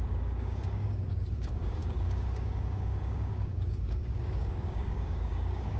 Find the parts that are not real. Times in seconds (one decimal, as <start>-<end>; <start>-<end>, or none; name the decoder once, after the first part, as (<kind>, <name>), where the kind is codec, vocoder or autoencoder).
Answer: 0.0-5.8 (codec, DAC)